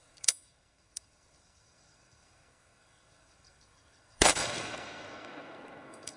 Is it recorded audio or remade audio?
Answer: remade